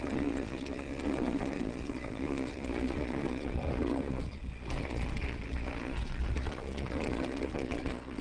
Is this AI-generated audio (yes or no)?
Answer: yes